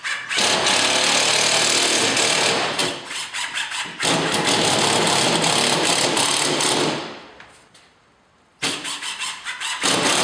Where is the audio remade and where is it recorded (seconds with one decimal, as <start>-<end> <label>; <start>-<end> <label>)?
0.0-10.2 recorded